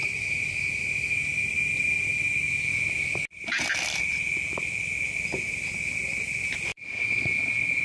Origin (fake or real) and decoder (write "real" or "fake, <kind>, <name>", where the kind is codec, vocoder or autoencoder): real